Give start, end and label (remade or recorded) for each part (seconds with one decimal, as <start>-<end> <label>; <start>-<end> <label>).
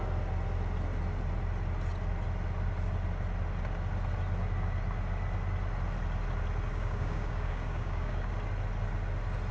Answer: 0.0-6.7 recorded; 6.7-8.3 remade; 8.3-9.5 recorded